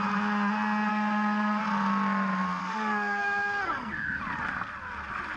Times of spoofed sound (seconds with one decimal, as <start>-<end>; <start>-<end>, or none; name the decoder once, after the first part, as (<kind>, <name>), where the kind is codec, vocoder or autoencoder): 0.9-1.6 (codec, SNAC); 2.6-4.2